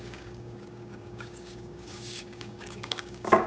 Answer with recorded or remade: remade